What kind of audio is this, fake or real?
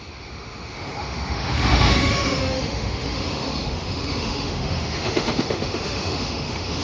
fake